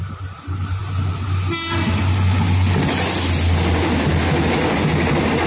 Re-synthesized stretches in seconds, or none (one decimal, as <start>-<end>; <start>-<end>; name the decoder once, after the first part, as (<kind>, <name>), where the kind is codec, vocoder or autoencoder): none